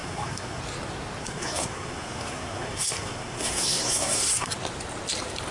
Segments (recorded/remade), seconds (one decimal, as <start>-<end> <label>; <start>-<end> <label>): 0.0-0.6 remade; 0.6-1.2 recorded; 1.2-4.5 remade; 4.5-5.5 recorded